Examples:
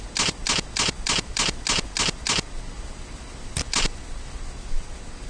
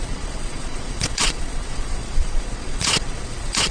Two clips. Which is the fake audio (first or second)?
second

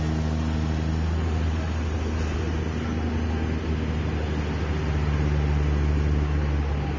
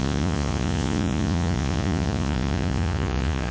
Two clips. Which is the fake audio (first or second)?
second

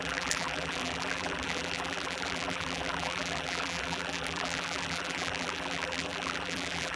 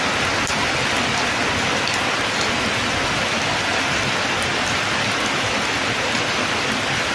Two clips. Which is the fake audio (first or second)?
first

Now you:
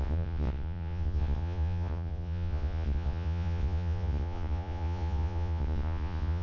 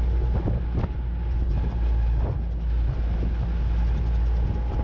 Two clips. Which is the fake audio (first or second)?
first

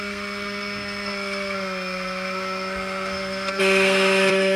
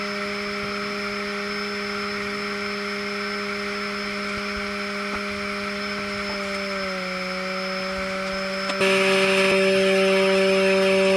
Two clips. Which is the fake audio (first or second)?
first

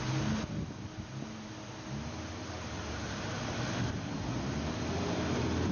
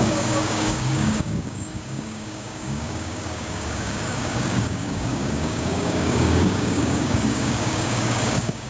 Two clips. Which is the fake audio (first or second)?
second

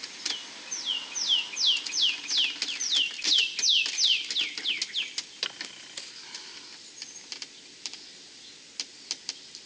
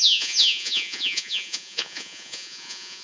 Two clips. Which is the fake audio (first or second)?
second